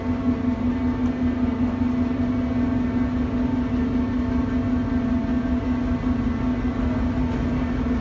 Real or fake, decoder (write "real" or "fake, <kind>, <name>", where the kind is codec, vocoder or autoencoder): real